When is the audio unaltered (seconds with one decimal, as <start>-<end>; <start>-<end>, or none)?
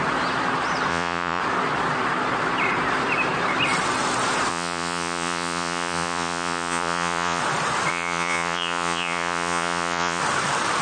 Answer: 0.0-0.9; 1.4-4.5; 7.4-7.9; 10.2-10.8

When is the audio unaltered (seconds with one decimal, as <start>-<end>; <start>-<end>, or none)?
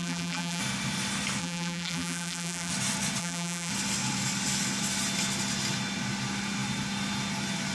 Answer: 0.6-1.4; 2.7-3.2; 3.7-7.7